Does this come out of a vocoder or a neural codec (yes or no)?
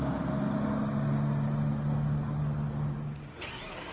no